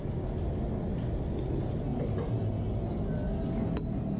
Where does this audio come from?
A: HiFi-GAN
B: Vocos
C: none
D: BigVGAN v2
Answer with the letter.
C